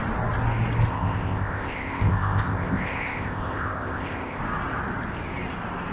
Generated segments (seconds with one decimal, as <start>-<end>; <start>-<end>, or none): 0.9-4.4